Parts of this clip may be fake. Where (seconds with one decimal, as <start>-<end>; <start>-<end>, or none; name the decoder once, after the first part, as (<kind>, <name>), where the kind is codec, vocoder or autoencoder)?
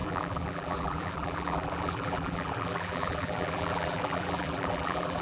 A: 0.0-5.2 (vocoder, BigVGAN v2)